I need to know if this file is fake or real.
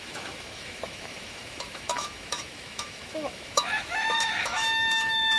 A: fake